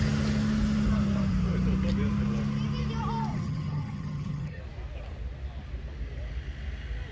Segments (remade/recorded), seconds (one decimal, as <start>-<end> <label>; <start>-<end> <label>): 0.0-3.3 recorded; 3.3-4.6 remade; 4.6-7.1 recorded